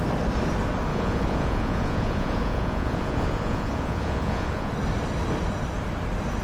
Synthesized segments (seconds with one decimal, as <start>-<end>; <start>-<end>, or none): 0.9-4.7